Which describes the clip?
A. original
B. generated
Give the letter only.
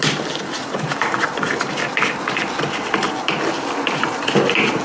A